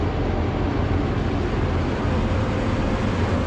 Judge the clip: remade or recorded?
recorded